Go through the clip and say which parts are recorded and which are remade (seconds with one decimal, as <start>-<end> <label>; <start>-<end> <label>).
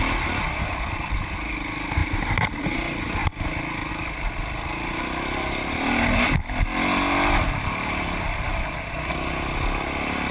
0.0-10.3 recorded